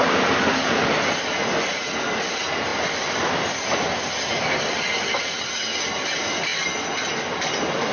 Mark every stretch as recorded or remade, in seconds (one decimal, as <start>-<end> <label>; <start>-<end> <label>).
0.0-7.9 recorded